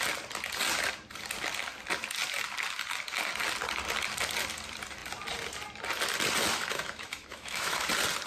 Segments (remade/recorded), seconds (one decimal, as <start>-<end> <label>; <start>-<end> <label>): 0.0-6.5 recorded; 6.5-7.9 remade; 7.9-8.3 recorded